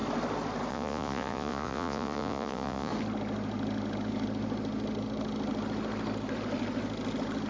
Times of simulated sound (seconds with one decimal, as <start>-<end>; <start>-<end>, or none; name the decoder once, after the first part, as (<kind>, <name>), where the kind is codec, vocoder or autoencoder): 0.7-2.9 (vocoder, Vocos)